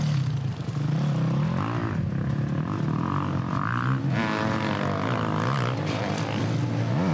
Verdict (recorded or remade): recorded